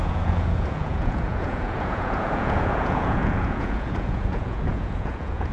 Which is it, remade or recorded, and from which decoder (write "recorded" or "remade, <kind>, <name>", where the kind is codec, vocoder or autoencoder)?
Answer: remade, vocoder, Vocos